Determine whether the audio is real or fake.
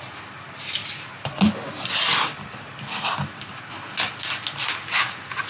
real